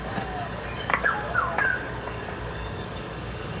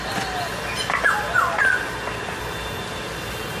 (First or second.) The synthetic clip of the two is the first